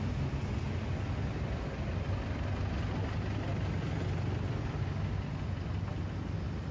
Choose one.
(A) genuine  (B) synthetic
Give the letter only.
A